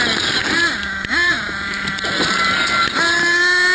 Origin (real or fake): real